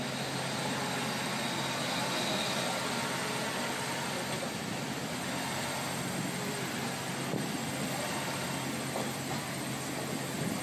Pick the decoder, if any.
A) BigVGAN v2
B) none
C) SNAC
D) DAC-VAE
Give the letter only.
B